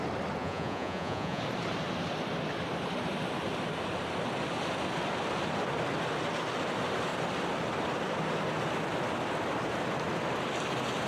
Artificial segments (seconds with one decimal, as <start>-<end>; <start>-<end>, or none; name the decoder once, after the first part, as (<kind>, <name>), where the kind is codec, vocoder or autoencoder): 0.4-1.4 (vocoder, Vocos)

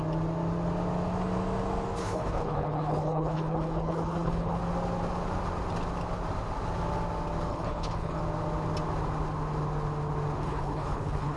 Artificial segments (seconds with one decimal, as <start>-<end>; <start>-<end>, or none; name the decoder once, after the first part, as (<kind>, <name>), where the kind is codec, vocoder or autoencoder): 2.0-4.6 (codec, HILCodec); 7.5-8.2; 10.4-11.4

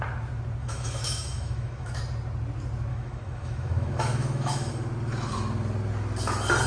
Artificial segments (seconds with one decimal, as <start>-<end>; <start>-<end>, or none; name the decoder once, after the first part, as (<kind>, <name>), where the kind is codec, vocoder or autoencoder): 0.6-2.0 (autoencoder, DAC-VAE); 2.9-4.7